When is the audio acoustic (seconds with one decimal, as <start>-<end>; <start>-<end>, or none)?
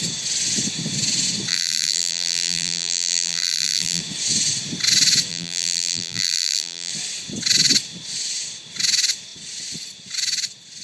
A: 0.0-1.5; 4.0-5.3; 6.9-10.8